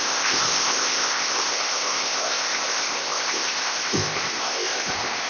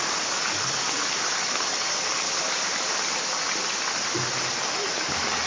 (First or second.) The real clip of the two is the second